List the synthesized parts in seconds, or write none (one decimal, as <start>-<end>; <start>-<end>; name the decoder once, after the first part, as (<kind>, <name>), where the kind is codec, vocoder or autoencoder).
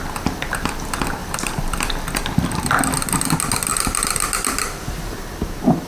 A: 1.2-2.2 (vocoder, BigVGAN v2); 3.7-5.9